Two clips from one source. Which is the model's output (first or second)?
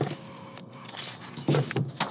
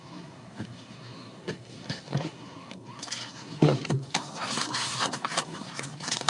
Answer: second